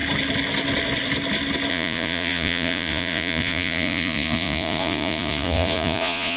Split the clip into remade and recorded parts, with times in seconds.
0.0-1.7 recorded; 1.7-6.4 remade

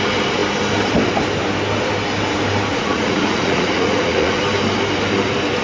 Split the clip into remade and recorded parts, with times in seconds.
0.0-2.7 recorded; 2.7-4.3 remade; 4.3-5.6 recorded